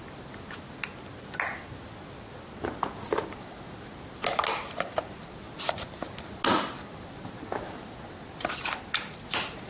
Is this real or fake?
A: real